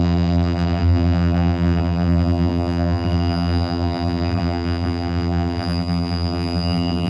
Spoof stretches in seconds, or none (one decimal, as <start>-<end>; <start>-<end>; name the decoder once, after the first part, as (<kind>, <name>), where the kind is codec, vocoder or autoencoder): 0.0-7.1 (vocoder, BigVGAN v2)